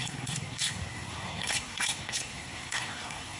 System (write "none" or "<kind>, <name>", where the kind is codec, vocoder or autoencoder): codec, SNAC